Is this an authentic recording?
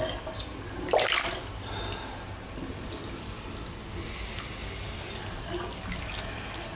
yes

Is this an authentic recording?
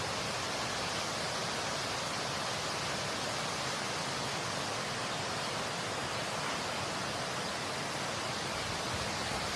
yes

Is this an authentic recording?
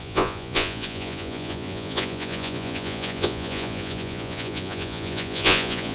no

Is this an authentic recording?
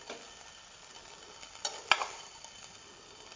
yes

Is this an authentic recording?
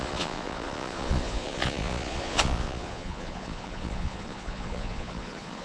no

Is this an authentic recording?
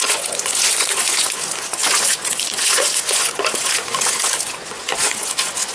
no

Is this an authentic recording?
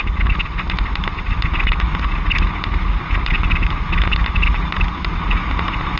yes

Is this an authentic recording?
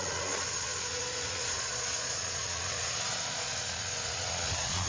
no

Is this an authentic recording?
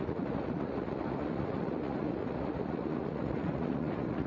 no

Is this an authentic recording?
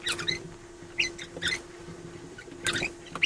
yes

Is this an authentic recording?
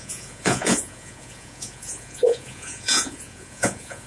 no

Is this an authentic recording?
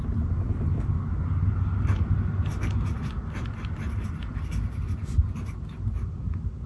yes